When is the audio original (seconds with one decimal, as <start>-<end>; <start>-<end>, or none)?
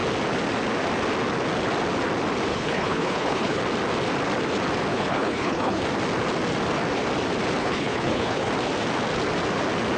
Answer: 0.0-2.5; 3.6-4.9; 5.8-7.6; 8.5-10.0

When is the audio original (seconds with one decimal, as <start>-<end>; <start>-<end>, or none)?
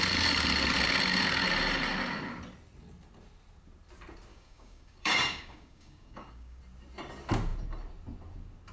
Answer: 0.0-4.3; 6.6-8.7